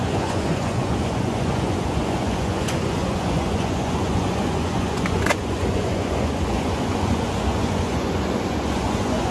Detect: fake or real fake